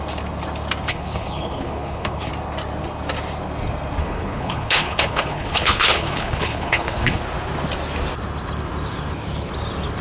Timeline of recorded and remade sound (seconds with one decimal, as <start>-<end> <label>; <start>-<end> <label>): 0.0-0.9 recorded; 0.9-2.3 remade; 2.3-4.0 recorded; 4.0-7.2 remade; 7.2-10.0 recorded